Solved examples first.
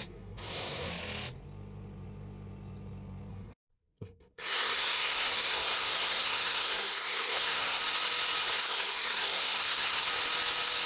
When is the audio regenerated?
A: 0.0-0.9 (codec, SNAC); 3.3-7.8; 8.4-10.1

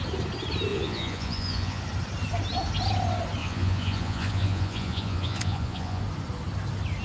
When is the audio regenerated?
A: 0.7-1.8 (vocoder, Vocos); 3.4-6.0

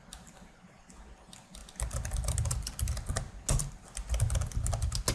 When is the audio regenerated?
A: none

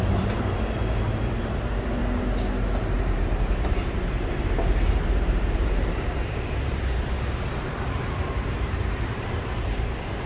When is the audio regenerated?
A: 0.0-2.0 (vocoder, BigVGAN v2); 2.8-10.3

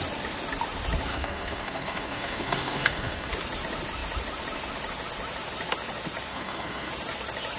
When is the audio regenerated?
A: 1.1-3.3 (codec, SNAC); 6.3-6.9

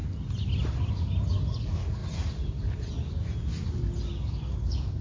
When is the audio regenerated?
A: none

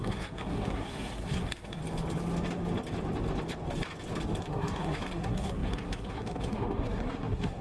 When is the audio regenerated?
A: 0.0-1.8 (codec, SNAC); 4.4-7.6